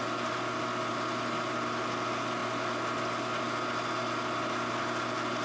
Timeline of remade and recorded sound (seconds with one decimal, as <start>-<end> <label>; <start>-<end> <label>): 0.0-5.4 recorded